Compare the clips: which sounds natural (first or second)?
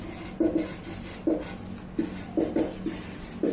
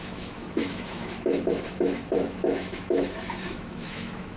first